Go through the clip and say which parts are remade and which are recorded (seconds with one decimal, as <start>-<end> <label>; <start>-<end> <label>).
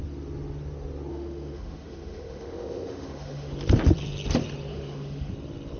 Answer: 0.0-1.1 recorded; 1.1-3.5 remade; 3.5-4.7 recorded; 4.7-5.3 remade; 5.3-5.8 recorded